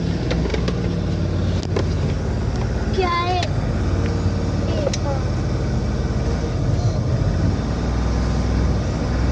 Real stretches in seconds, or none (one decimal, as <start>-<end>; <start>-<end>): 0.0-9.3